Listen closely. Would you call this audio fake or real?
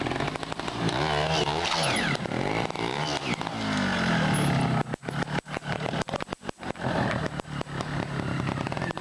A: real